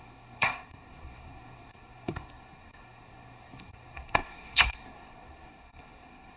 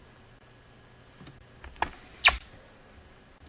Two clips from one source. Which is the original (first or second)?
second